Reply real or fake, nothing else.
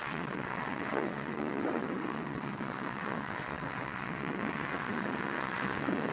fake